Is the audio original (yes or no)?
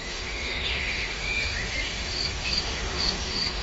no